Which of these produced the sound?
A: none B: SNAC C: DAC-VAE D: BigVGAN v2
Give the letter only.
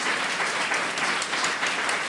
A